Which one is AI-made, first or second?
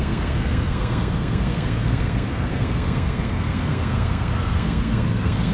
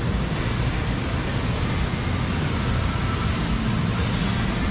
first